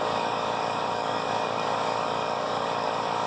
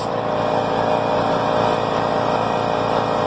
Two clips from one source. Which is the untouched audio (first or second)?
second